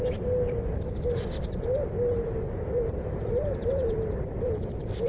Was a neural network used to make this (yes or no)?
yes